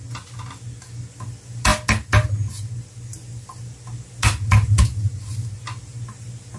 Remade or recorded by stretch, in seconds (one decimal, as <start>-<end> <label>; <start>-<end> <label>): 0.0-6.6 recorded